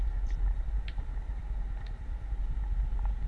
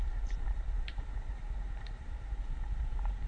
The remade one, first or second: second